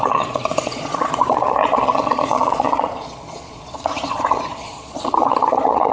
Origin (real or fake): fake